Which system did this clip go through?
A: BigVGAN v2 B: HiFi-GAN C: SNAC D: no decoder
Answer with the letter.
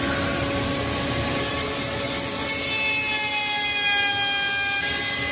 D